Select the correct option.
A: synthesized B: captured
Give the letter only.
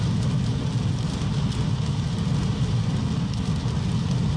B